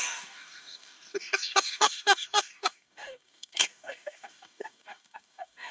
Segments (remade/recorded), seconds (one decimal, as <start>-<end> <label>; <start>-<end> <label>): 0.0-5.7 remade